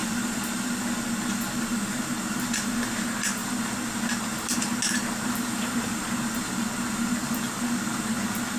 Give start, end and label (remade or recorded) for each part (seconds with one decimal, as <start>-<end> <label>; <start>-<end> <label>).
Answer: 0.0-0.7 remade; 0.7-8.6 recorded